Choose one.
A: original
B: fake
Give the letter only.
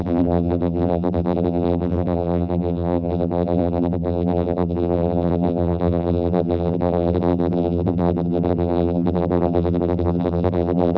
B